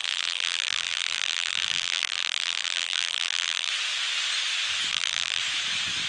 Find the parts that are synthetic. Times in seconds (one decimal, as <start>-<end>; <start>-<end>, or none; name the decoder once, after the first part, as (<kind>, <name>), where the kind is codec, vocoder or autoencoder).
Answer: 0.0-3.7 (vocoder, BigVGAN v2); 4.9-5.4